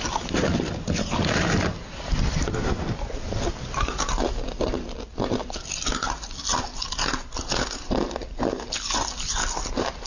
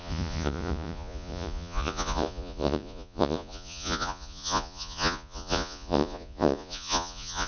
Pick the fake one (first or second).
second